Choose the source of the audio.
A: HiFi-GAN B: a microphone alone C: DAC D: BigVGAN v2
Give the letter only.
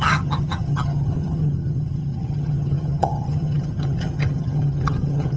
A